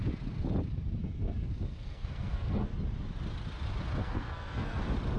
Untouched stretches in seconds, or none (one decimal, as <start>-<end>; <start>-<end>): 0.0-1.0; 2.7-4.0; 4.8-5.2